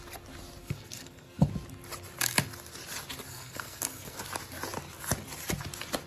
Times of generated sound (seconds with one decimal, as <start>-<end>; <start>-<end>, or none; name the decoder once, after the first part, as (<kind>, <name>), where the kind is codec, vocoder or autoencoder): 0.6-1.5 (codec, SNAC); 3.3-4.2